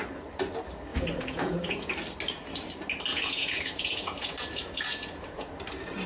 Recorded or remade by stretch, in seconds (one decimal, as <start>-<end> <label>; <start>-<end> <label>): 0.0-0.9 recorded; 0.9-1.9 remade; 1.9-3.1 recorded; 3.1-5.5 remade; 5.5-6.1 recorded